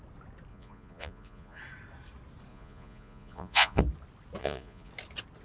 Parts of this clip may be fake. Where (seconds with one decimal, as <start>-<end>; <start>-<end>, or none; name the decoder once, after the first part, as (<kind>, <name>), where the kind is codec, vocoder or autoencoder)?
0.5-1.6 (vocoder, Vocos); 2.5-3.8; 4.4-4.9